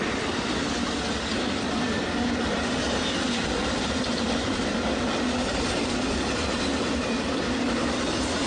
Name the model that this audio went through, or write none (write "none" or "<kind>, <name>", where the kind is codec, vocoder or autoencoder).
vocoder, BigVGAN v2